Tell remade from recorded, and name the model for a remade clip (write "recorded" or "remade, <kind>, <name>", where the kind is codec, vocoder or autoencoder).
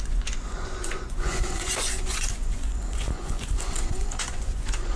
remade, vocoder, Vocos